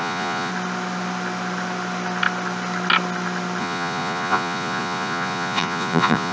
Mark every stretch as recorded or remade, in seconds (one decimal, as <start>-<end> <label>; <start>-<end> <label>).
0.0-0.5 remade; 0.5-3.6 recorded; 3.6-6.3 remade